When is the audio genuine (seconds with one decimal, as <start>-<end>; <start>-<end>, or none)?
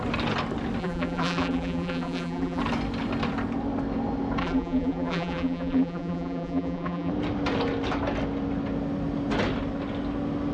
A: 0.0-0.8; 2.6-4.4; 7.1-10.5